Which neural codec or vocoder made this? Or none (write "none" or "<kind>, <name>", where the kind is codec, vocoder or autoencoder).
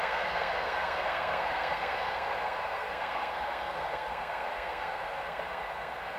codec, SNAC